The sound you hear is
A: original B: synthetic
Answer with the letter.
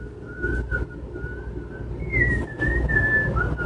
A